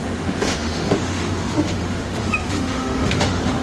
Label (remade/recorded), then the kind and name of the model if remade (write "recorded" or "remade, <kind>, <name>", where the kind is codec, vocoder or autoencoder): remade, autoencoder, DAC-VAE